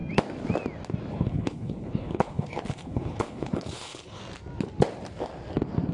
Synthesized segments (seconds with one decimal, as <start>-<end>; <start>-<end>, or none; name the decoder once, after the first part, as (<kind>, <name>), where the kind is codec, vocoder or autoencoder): 1.1-4.2 (codec, HILCodec)